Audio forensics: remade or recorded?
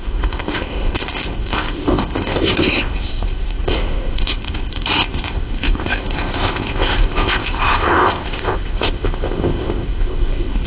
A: remade